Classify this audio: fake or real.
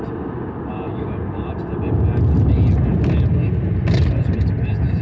real